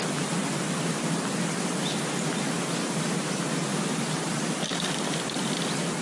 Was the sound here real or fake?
real